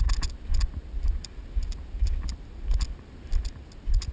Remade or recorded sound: recorded